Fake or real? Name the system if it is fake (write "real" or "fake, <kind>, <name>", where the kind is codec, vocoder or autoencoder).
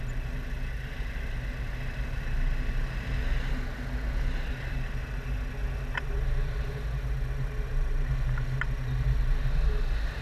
real